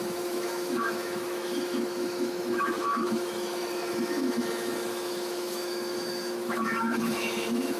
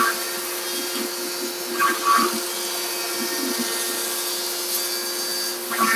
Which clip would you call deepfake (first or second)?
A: first